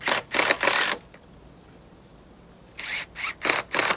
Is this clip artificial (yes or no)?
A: no